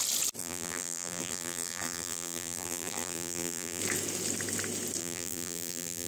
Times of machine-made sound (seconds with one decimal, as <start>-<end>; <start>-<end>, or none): 0.4-3.8; 5.0-6.1